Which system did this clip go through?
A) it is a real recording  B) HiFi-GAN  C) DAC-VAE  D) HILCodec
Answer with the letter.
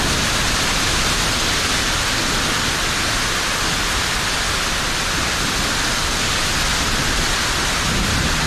A